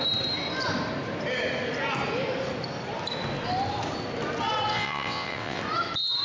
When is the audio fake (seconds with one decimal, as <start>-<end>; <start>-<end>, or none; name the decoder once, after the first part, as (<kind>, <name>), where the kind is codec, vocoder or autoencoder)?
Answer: 4.7-5.6 (vocoder, WaveNeXt)